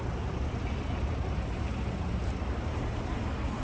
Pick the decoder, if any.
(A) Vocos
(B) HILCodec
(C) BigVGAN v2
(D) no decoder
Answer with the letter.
D